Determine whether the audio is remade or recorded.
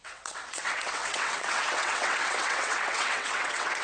remade